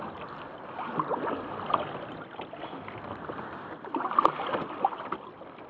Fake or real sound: real